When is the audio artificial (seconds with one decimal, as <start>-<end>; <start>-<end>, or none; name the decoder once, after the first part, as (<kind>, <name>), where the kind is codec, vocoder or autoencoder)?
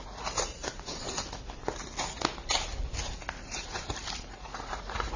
0.0-1.1 (vocoder, Vocos); 4.2-5.2